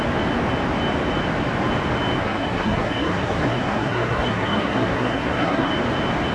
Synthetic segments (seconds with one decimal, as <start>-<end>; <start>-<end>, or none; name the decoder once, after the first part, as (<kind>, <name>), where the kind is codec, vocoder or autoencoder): 2.2-5.7 (codec, SNAC)